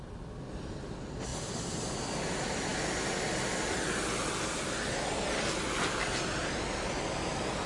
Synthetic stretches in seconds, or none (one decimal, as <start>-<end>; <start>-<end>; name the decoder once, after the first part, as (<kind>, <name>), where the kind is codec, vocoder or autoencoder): none